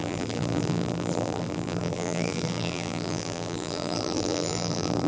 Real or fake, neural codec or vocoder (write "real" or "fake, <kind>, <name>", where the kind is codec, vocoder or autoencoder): fake, vocoder, BigVGAN v2